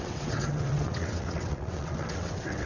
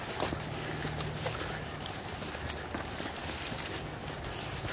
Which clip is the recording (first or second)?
second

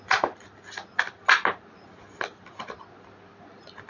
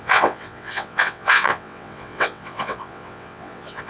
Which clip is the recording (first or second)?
first